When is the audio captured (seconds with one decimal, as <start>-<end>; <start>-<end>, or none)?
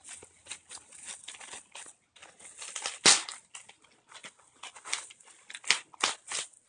0.0-6.7